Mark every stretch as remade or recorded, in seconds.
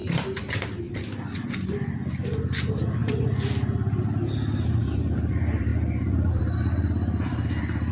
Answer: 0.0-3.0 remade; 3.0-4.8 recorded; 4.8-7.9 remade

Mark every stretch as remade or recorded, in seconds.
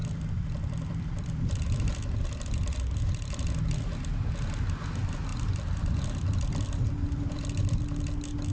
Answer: 0.0-3.6 remade; 3.6-5.3 recorded; 5.3-7.8 remade; 7.8-8.5 recorded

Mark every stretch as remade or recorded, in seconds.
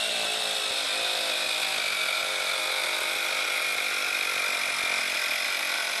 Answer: 0.0-6.0 recorded